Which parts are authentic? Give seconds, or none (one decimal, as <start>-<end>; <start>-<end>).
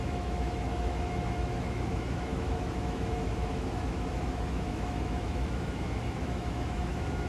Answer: none